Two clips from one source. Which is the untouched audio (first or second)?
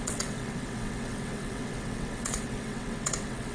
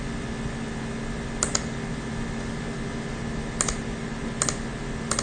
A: second